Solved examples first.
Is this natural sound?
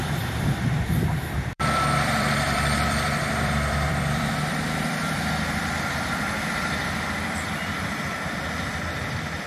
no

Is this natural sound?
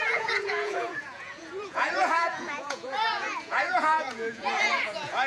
no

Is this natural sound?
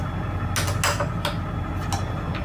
yes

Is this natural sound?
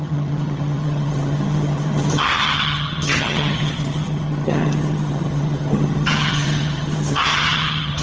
no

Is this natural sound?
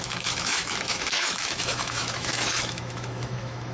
no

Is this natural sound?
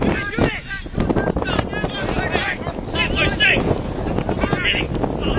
yes